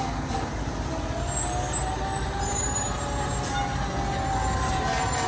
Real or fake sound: real